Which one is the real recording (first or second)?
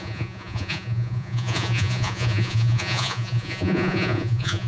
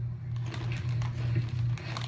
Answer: second